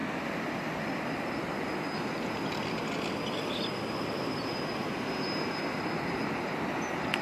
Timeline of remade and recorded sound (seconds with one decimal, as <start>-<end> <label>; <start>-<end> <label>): 0.0-7.2 recorded